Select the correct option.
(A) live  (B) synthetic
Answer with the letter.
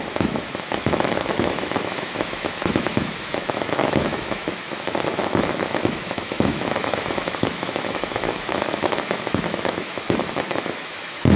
B